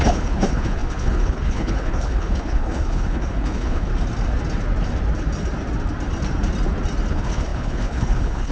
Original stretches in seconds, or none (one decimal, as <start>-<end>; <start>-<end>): 3.9-7.1